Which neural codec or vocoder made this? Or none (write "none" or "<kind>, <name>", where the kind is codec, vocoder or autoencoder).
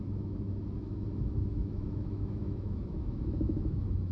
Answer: autoencoder, DAC-VAE